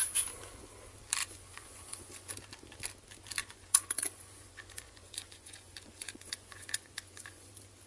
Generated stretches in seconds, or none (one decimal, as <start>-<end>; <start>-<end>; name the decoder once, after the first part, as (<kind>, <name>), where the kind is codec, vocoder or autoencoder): 1.2-2.3 (vocoder, Vocos); 3.4-7.5